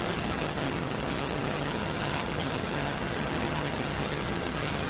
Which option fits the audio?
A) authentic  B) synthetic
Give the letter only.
B